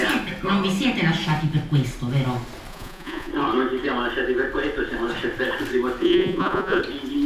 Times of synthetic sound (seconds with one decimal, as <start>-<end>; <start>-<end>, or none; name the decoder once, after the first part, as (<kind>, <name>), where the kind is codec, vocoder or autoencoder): 2.7-3.3 (vocoder, Vocos); 6.0-6.8